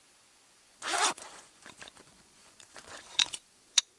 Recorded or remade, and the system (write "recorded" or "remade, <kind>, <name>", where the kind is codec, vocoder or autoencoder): remade, vocoder, Vocos